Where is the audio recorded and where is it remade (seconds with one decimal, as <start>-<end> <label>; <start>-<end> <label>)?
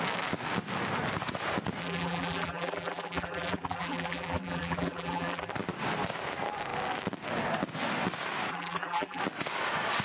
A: 0.0-1.8 recorded; 1.8-5.5 remade; 5.5-8.5 recorded; 8.5-9.2 remade; 9.2-10.0 recorded